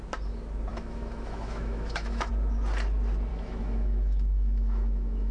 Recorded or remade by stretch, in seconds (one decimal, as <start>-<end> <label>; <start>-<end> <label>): 0.0-0.7 recorded; 0.7-2.3 remade; 2.3-3.3 recorded; 3.3-5.3 remade